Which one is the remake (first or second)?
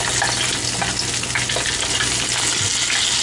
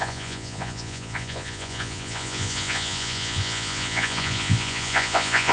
second